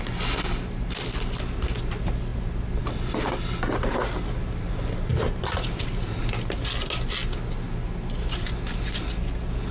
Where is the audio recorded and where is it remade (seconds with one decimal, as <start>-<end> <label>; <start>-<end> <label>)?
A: 0.0-5.1 recorded; 5.1-6.2 remade; 6.2-9.7 recorded